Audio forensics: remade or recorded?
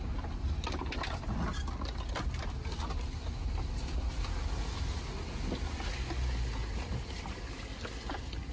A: recorded